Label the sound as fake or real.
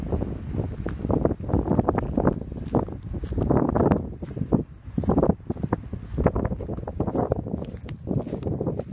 real